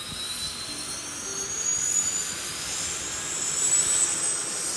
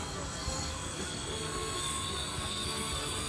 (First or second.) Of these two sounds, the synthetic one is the second